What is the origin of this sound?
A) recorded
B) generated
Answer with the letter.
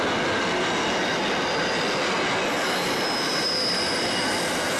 A